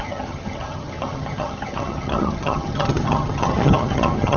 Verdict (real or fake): fake